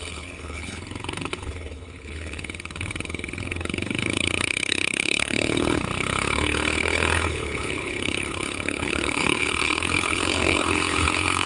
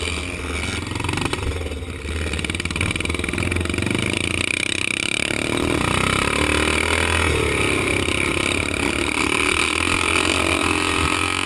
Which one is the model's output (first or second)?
first